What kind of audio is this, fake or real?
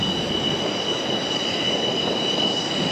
real